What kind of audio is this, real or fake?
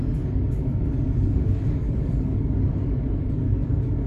fake